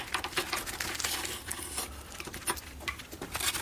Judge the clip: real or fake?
real